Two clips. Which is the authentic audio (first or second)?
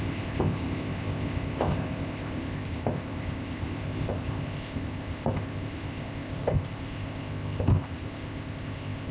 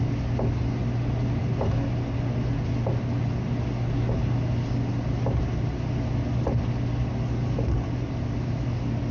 second